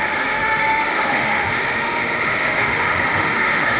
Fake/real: fake